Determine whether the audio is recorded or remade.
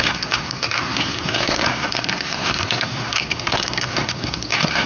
remade